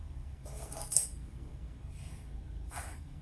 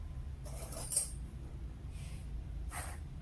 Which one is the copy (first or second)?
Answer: first